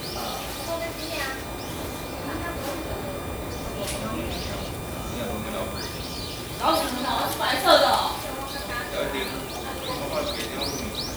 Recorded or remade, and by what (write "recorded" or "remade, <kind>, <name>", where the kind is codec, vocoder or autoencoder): recorded